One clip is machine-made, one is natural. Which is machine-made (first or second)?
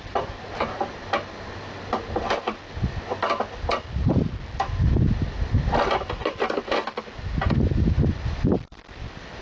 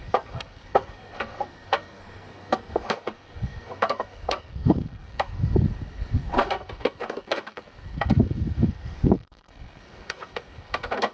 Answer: second